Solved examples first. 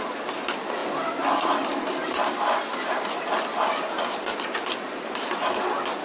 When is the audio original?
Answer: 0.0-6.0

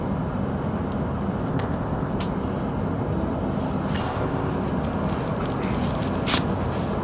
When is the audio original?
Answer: 0.0-1.5; 2.1-4.0; 4.5-7.0

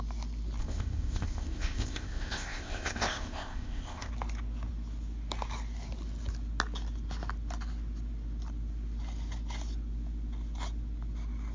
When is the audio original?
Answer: 0.0-0.6; 4.1-11.5

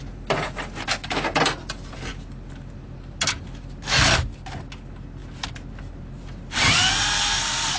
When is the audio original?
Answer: 0.0-7.8